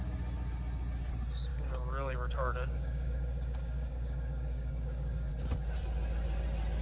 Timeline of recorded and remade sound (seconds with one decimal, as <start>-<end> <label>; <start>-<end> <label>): 0.0-1.5 recorded; 1.5-5.3 remade; 5.3-6.8 recorded